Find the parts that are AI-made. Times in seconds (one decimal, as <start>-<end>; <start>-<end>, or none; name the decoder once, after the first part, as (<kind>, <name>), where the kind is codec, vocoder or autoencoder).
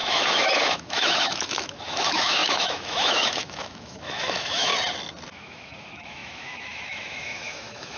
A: 0.0-4.7 (autoencoder, DAC-VAE); 5.3-8.0